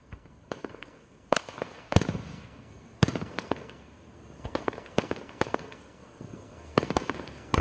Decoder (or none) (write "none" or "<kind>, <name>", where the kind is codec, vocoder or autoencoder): codec, SNAC